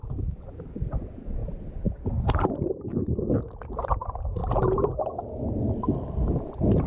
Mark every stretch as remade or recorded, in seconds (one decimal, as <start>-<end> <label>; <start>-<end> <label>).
0.0-6.9 recorded

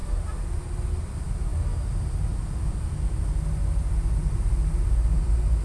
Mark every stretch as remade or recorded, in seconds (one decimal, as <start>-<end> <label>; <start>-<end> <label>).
0.0-5.6 recorded